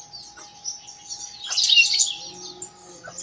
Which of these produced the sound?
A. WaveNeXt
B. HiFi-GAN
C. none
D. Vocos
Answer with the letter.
C